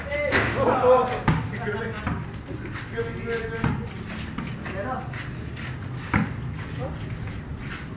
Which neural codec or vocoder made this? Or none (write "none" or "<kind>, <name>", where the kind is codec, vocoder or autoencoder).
none